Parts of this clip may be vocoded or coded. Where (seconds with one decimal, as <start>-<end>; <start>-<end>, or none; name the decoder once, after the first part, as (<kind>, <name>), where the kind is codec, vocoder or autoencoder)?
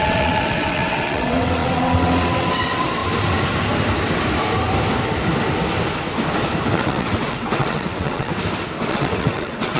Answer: 0.0-3.0 (vocoder, WaveNeXt); 6.7-8.3; 8.9-9.8